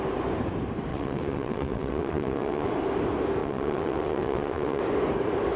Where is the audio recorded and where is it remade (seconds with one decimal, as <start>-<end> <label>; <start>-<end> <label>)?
0.0-0.9 recorded; 0.9-2.7 remade; 2.7-3.4 recorded; 3.4-4.8 remade; 4.8-5.6 recorded